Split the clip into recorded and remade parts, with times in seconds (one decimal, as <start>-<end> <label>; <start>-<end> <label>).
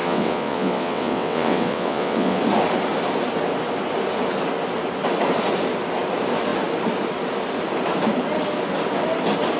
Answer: 0.0-2.4 remade; 2.4-9.6 recorded